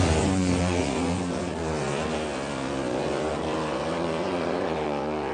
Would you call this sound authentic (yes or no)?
no